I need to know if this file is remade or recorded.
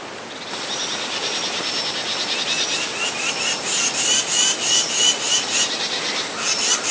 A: recorded